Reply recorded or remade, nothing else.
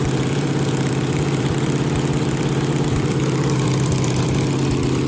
remade